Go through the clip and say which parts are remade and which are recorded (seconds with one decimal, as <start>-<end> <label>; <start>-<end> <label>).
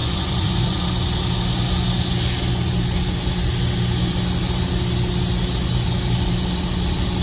0.0-0.8 remade; 0.8-7.2 recorded